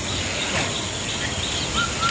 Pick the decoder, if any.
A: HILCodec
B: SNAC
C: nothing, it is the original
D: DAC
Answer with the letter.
C